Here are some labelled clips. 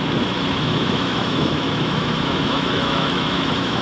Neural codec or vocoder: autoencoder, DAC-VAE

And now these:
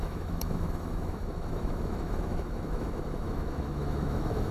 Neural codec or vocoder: autoencoder, DAC-VAE